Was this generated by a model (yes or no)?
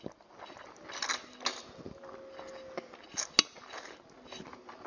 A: no